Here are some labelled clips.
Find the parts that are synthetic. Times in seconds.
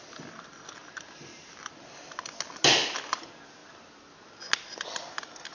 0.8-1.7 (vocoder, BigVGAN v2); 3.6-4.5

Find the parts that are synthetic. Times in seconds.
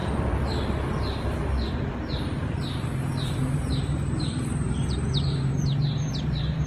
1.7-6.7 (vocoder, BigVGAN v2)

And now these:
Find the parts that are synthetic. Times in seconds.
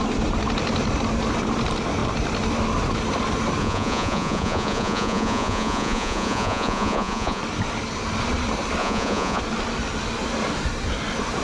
3.6-7.4 (vocoder, Vocos); 8.8-9.4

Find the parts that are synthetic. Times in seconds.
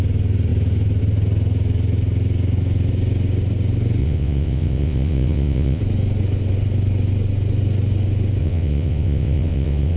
4.0-5.8 (vocoder, WaveNeXt); 8.4-10.0